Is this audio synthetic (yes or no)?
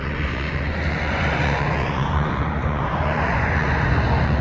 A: yes